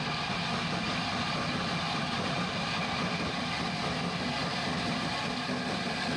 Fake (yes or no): no